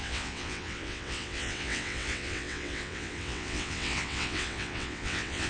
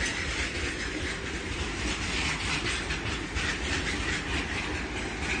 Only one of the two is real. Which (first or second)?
second